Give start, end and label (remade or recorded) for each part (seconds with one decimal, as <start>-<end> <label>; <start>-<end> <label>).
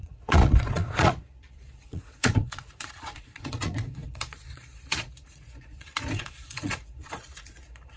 0.0-8.0 remade